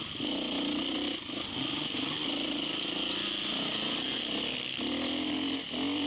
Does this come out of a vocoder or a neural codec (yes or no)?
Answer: no